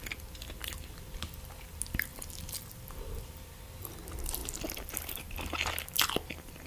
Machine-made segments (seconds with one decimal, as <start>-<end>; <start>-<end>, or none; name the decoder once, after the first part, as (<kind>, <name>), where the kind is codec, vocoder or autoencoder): none